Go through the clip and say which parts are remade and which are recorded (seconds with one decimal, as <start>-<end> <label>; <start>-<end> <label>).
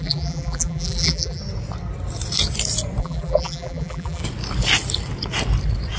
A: 0.0-1.4 remade; 1.4-3.0 recorded; 3.0-4.2 remade; 4.2-6.0 recorded